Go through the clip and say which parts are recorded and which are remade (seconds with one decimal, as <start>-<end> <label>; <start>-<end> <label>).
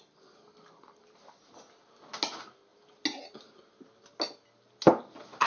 0.0-5.5 recorded